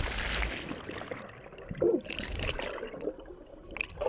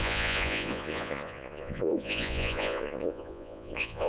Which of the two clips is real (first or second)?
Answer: first